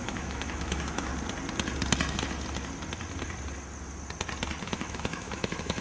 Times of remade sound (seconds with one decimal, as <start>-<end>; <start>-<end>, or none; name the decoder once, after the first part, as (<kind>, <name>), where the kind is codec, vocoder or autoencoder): 0.0-1.1 (autoencoder, DAC-VAE); 4.6-5.8